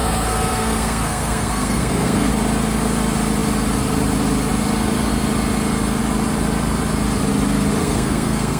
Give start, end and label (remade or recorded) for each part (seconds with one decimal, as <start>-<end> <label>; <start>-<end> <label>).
0.0-2.3 remade; 2.3-7.8 recorded; 7.8-8.6 remade